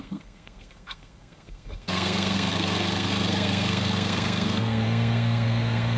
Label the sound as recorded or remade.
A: remade